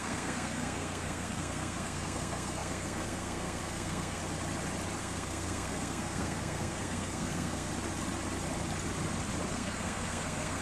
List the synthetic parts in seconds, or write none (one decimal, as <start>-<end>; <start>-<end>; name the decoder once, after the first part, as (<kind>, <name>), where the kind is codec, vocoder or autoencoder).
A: 0.0-4.2 (codec, SNAC); 5.0-7.7; 9.5-10.6